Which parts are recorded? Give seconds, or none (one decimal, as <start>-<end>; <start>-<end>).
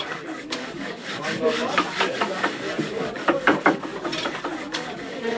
3.9-4.6